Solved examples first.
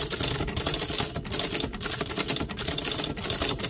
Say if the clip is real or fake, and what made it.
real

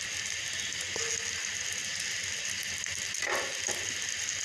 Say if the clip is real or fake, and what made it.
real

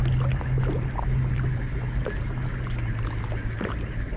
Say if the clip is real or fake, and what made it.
real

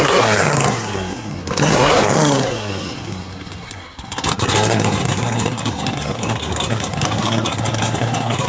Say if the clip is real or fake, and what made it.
fake, codec, SNAC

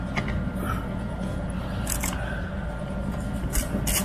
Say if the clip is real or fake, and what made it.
real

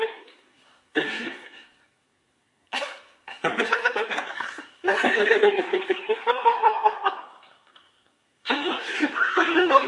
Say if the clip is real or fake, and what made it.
fake, codec, SNAC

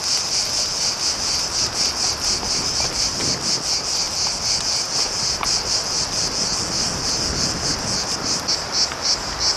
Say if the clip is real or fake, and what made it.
real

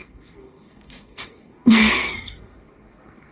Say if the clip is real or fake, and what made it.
fake, codec, SNAC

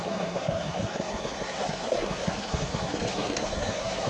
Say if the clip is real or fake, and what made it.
fake, codec, SNAC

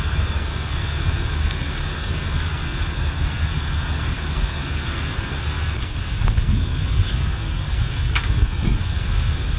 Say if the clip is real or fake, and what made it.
fake, codec, SNAC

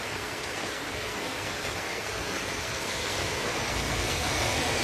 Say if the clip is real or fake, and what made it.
fake, codec, SNAC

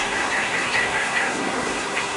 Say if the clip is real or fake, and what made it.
fake, codec, SNAC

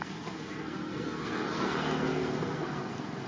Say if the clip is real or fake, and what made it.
fake, codec, SNAC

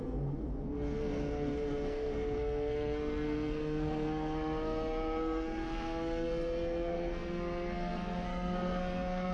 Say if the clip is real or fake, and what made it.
fake, codec, SNAC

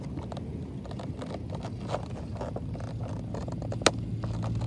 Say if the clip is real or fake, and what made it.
real